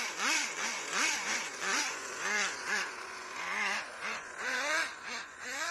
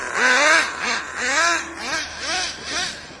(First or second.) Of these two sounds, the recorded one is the second